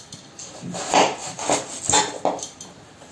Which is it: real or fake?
real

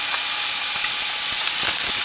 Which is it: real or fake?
real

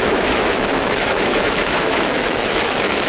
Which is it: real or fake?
fake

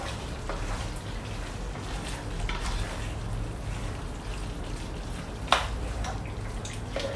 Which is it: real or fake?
real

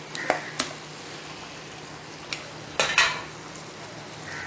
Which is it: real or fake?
real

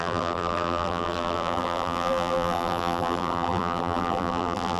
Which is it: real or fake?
fake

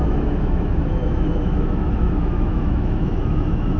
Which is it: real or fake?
fake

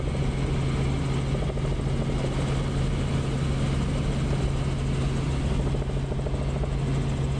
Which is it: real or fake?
real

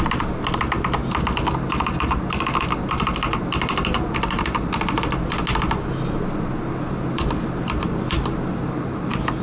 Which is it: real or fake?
real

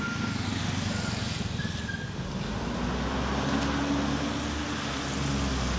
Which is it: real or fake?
real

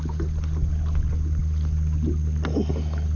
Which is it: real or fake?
real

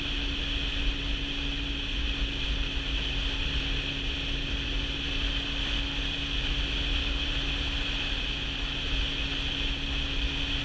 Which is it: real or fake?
real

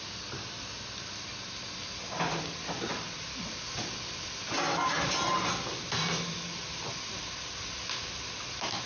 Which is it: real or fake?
real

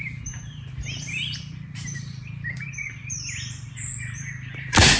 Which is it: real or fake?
fake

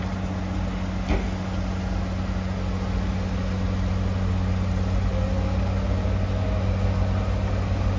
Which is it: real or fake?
real